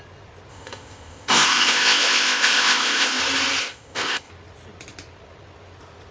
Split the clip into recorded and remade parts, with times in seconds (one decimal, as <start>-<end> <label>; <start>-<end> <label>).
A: 0.0-0.5 recorded; 0.5-3.2 remade; 3.2-3.6 recorded; 3.6-4.3 remade; 4.3-6.1 recorded